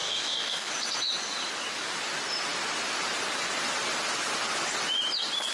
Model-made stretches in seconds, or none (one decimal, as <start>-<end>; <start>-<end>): 0.0-0.7